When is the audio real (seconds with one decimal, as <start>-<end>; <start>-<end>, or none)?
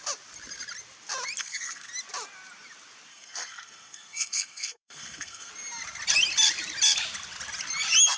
0.0-1.4; 1.9-3.1; 5.5-8.2